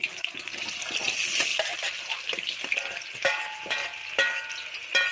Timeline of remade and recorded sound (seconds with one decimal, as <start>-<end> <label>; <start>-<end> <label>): 0.0-5.1 recorded